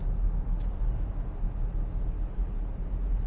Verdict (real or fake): real